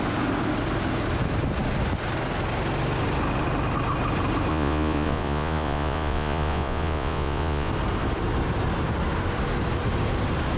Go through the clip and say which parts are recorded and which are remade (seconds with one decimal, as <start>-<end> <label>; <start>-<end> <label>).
0.0-4.5 recorded; 4.5-7.7 remade; 7.7-10.6 recorded